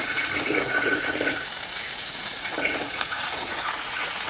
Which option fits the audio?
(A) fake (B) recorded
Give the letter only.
A